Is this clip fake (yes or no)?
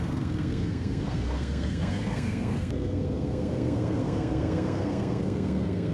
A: yes